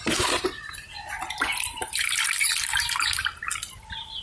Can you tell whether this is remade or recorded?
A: recorded